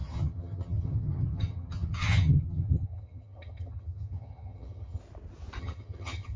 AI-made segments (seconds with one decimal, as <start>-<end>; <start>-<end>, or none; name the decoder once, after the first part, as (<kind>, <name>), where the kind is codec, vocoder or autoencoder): 0.0-5.0 (vocoder, HiFi-GAN); 5.6-6.4